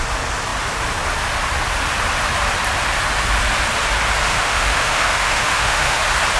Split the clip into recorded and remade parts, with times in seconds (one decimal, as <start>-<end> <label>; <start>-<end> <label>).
0.0-4.3 recorded; 4.3-6.0 remade; 6.0-6.4 recorded